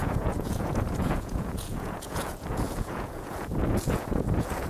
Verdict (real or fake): fake